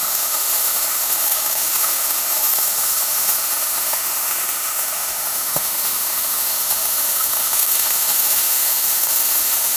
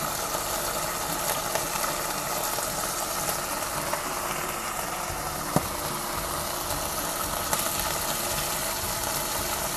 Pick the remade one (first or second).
first